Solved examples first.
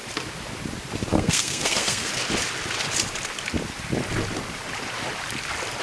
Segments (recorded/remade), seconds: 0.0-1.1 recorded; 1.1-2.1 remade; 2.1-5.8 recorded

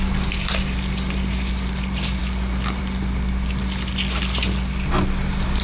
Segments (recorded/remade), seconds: 0.0-5.6 recorded

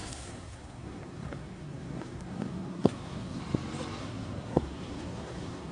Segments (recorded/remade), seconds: 0.0-3.4 remade; 3.4-4.0 recorded; 4.0-5.7 remade